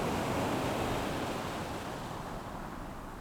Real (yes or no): yes